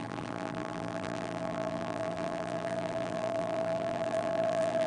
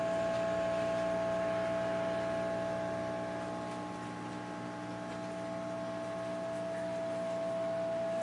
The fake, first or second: first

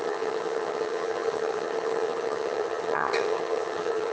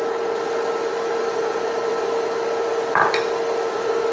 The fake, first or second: first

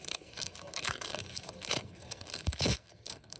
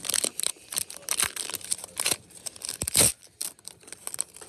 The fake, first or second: first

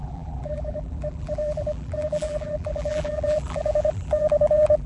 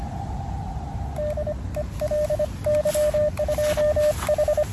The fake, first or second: first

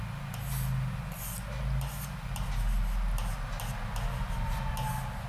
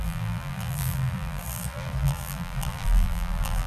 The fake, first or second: second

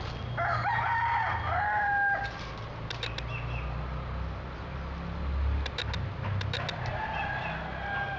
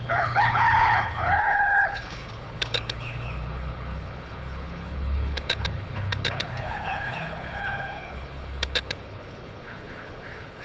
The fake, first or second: second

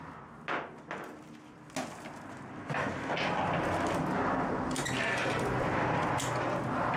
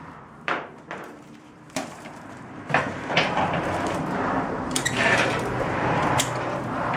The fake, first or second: second